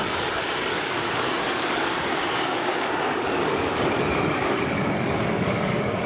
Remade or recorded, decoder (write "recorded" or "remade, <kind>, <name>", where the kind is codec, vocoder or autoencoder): remade, codec, DAC